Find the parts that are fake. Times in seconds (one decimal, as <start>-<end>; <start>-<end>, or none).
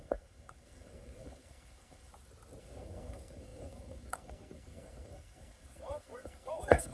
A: 0.0-2.1; 2.6-6.9